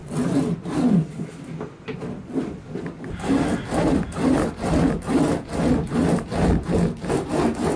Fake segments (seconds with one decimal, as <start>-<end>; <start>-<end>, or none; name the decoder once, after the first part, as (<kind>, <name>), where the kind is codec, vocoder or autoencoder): 0.0-7.8 (vocoder, BigVGAN v2)